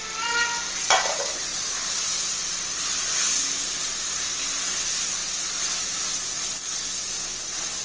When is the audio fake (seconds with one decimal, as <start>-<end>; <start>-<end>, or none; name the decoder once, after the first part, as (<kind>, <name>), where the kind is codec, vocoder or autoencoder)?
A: none